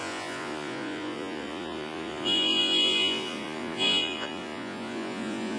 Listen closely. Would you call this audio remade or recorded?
remade